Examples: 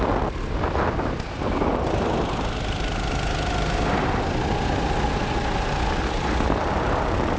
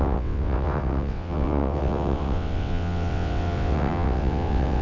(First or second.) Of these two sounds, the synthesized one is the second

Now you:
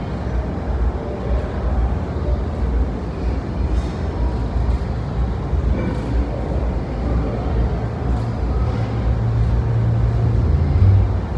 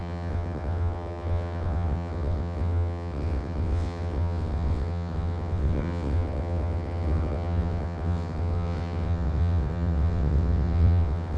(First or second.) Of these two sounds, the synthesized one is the second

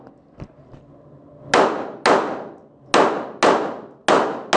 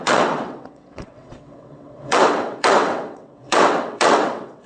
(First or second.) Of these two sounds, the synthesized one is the second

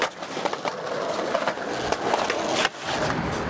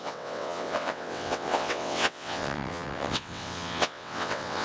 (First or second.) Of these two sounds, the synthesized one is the second